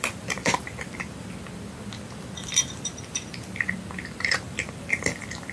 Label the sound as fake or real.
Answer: fake